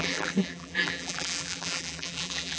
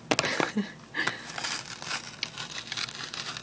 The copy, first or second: first